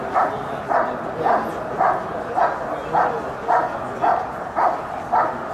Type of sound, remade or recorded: recorded